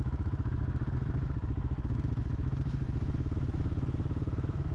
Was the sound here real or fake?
fake